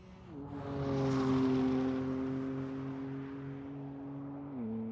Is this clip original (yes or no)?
yes